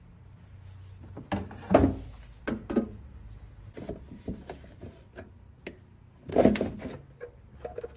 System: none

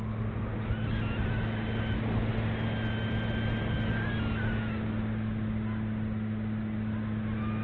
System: none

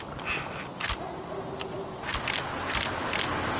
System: none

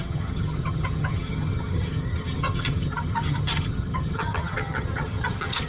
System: vocoder, HiFi-GAN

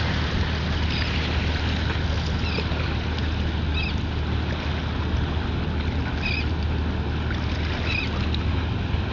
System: none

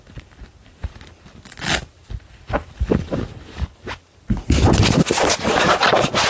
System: none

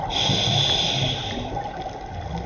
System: none